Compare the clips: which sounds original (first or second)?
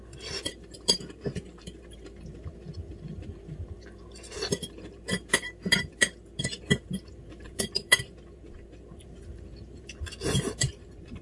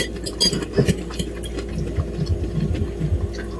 second